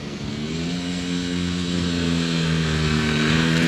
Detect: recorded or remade remade